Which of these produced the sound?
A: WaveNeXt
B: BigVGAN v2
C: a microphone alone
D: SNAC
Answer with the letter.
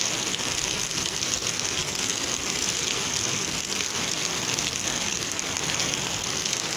D